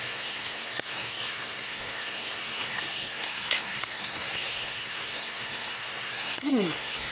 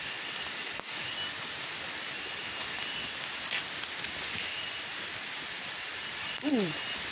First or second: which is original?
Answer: second